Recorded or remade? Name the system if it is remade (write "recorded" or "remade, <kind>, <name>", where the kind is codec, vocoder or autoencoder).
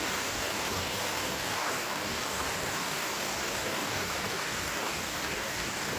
remade, codec, DAC